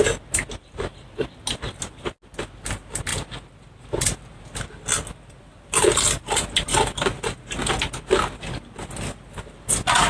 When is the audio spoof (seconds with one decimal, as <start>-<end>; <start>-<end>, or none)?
none

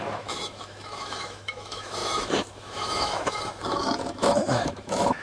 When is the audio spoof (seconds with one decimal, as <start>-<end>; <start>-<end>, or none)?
0.0-5.2

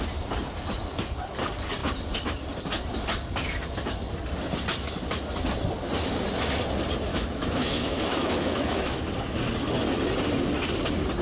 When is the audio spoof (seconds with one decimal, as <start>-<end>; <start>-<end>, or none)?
7.1-9.0

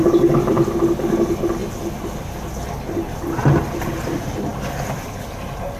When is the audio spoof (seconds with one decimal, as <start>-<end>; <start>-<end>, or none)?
none

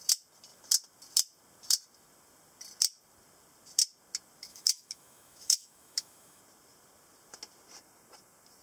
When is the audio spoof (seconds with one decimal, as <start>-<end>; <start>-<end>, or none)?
4.5-6.4

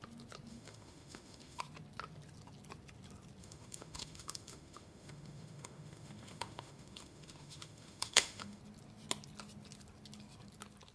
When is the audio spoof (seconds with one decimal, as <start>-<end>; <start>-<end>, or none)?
0.5-1.6; 3.4-8.6

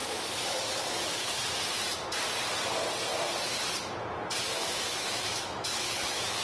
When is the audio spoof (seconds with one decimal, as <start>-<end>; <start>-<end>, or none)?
0.0-1.4; 4.4-6.4